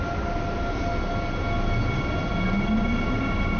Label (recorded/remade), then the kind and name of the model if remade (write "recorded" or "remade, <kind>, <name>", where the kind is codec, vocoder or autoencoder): recorded